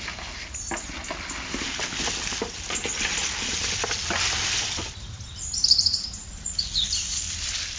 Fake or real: real